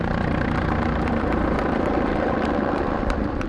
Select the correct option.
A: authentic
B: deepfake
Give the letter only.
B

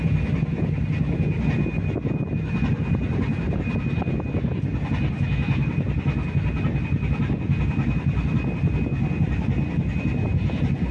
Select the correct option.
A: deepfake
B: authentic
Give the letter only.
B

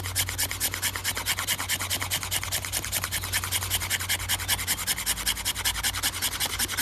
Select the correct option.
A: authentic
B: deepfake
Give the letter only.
A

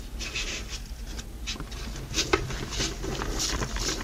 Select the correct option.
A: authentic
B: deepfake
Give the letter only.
A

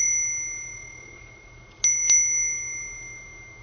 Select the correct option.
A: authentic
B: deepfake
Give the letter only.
A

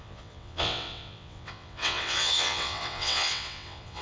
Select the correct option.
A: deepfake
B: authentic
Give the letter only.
A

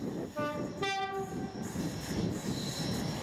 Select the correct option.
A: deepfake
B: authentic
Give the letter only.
B